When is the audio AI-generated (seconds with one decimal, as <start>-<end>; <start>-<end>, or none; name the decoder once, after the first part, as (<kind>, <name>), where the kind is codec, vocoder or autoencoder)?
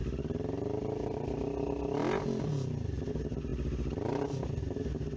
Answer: none